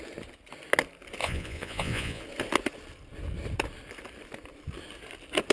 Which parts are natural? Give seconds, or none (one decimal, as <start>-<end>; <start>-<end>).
0.0-1.2; 2.2-5.5